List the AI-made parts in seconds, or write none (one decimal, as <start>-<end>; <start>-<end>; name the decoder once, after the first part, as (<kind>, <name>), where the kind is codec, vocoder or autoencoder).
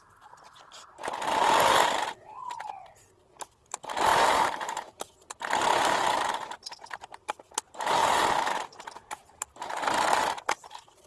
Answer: 4.1-5.0 (vocoder, BigVGAN v2)